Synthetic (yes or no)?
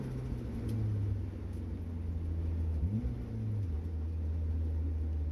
no